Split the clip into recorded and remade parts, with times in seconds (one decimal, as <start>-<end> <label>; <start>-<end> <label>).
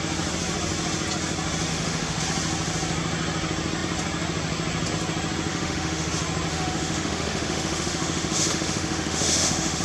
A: 0.0-1.7 recorded; 1.7-2.2 remade; 2.2-5.5 recorded; 5.5-6.1 remade; 6.1-6.5 recorded; 6.5-9.8 remade